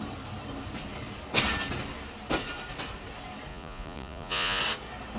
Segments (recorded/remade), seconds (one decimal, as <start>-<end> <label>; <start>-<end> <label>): 0.0-3.5 recorded; 3.5-4.6 remade; 4.6-5.2 recorded